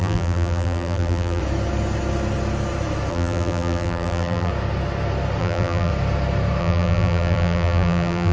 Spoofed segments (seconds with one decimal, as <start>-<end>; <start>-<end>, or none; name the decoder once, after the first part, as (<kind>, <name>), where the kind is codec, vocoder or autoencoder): 0.0-1.4 (vocoder, BigVGAN v2); 3.1-4.5; 5.4-5.9; 6.6-8.3